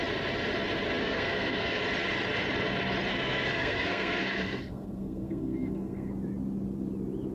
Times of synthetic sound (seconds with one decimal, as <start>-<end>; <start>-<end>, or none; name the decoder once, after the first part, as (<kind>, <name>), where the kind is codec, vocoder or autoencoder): 1.0-1.8 (codec, SNAC); 3.1-6.1